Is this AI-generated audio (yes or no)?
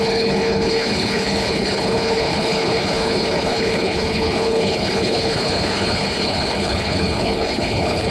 yes